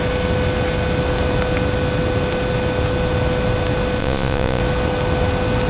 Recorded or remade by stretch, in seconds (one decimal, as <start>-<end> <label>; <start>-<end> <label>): 0.0-4.0 recorded; 4.0-4.6 remade; 4.6-5.7 recorded